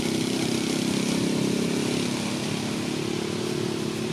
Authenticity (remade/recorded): recorded